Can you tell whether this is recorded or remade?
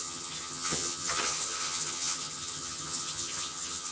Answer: remade